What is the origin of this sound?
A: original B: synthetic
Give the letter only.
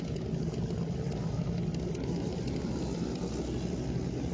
A